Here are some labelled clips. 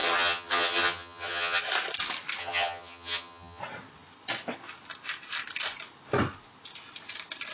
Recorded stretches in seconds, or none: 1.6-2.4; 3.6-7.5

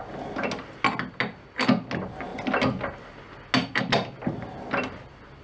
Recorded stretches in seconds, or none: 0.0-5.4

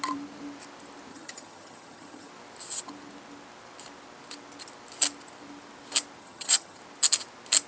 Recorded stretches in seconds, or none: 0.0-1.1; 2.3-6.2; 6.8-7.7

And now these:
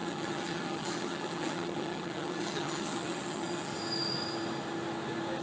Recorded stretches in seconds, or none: 3.7-5.4